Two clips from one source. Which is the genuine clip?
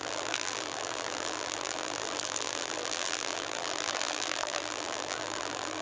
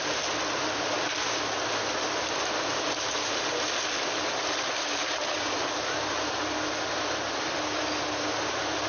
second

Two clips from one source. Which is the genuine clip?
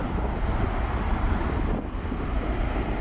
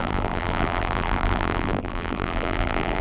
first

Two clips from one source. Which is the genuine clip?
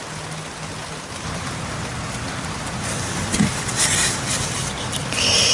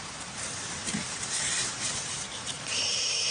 first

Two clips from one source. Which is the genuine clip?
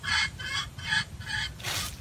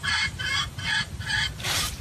first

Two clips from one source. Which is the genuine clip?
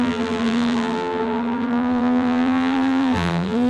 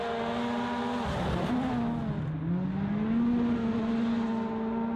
second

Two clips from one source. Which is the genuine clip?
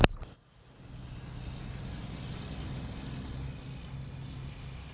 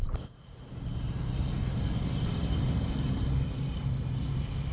first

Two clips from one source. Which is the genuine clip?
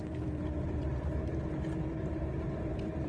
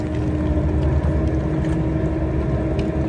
second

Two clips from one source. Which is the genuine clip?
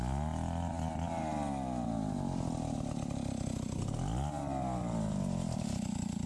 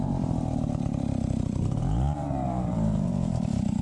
first